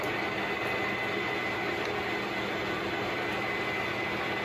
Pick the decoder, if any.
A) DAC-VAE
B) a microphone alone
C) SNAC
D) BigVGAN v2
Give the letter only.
B